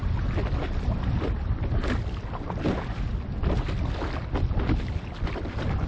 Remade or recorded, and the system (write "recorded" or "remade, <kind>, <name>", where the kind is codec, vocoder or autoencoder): recorded